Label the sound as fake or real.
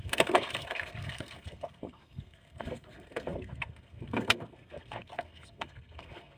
fake